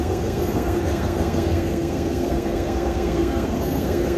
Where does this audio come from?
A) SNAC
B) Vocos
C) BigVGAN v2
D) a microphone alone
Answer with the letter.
A